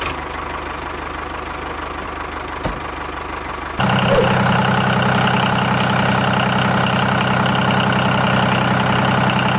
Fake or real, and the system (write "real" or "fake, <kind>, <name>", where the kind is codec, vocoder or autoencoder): real